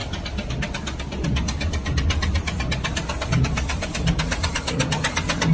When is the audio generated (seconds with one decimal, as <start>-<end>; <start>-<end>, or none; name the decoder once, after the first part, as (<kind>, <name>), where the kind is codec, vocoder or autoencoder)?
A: 3.7-4.5 (vocoder, BigVGAN v2)